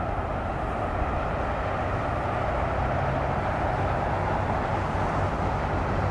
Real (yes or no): yes